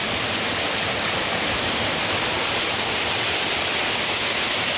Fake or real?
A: real